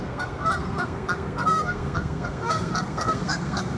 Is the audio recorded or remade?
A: remade